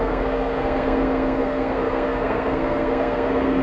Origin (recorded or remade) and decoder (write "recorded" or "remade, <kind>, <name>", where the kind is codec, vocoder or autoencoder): remade, codec, SNAC